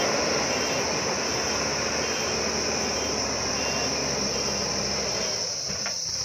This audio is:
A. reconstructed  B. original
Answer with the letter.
A